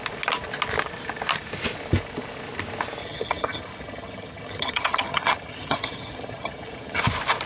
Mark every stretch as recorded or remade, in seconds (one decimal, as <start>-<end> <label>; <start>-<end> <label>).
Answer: 0.0-3.0 recorded; 3.0-7.0 remade; 7.0-7.5 recorded